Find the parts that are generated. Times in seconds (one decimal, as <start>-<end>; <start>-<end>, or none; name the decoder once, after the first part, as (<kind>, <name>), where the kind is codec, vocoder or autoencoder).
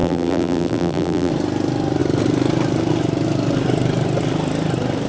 0.0-1.3 (vocoder, BigVGAN v2)